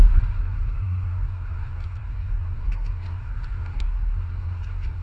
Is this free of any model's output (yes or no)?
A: no